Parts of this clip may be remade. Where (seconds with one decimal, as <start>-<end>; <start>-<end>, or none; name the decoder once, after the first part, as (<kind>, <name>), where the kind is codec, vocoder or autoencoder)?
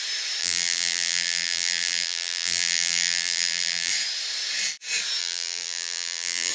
0.4-3.9 (vocoder, BigVGAN v2); 5.2-6.5